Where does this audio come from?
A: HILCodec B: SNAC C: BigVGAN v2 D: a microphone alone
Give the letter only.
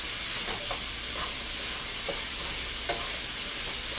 D